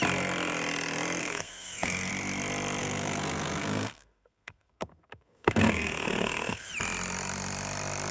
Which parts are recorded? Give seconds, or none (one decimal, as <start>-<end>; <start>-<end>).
0.0-1.2; 2.1-2.8; 6.7-8.1